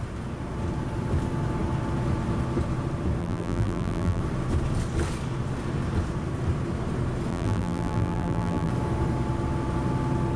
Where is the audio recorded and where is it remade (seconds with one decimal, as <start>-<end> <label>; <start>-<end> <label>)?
0.0-3.2 recorded; 3.2-4.2 remade; 4.2-7.3 recorded; 7.3-8.7 remade; 8.7-10.4 recorded